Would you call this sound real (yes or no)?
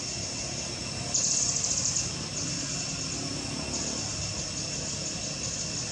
yes